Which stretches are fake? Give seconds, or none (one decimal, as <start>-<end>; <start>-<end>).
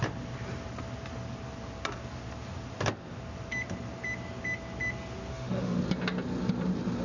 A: 5.3-5.8